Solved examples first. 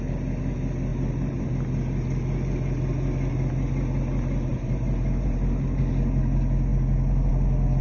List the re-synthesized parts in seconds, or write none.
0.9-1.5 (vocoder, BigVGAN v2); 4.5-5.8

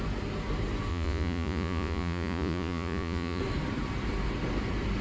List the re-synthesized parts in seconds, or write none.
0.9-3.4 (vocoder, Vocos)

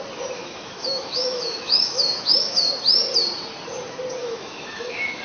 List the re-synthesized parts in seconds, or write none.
0.4-2.7 (autoencoder, DAC-VAE); 4.2-5.2

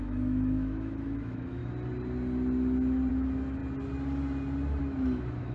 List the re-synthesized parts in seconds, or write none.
0.0-1.6 (autoencoder, DAC-VAE); 3.1-3.6; 4.8-5.5